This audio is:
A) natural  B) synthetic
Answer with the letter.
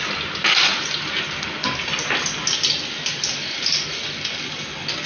A